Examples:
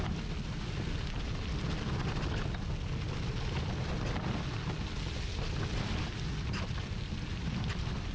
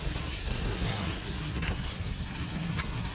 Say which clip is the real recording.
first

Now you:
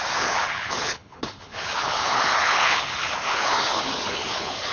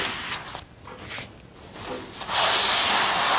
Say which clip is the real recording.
second